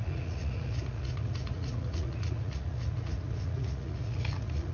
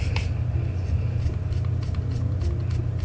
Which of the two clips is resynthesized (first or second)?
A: first